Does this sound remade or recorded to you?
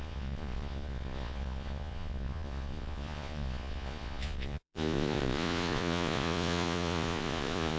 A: remade